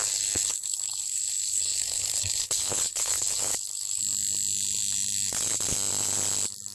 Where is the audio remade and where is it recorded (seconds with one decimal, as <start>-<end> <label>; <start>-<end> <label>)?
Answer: 0.0-4.0 remade; 4.0-6.7 recorded